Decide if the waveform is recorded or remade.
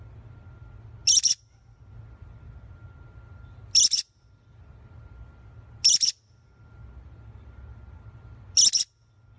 recorded